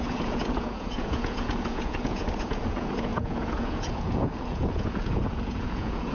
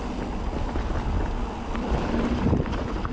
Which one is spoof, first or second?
first